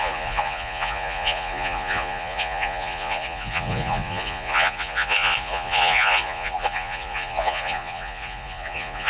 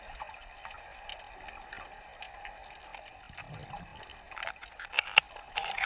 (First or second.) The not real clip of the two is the first